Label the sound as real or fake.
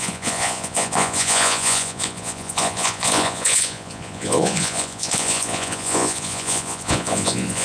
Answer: fake